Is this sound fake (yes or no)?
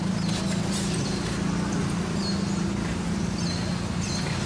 no